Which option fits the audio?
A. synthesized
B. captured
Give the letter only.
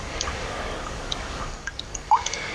A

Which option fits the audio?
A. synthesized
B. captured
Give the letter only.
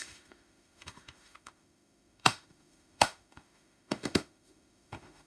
A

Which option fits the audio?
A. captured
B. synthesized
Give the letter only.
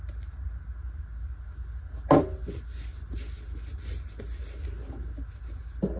A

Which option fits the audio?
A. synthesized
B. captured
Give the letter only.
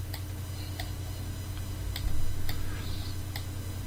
B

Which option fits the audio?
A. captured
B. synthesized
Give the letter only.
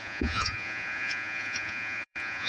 B